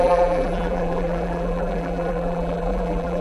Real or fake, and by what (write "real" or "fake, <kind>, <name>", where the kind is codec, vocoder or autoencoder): fake, vocoder, BigVGAN v2